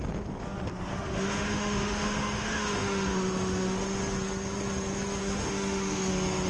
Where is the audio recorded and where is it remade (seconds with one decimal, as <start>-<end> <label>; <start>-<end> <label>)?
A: 0.0-0.9 recorded; 0.9-4.0 remade; 4.0-5.2 recorded; 5.2-6.1 remade; 6.1-6.5 recorded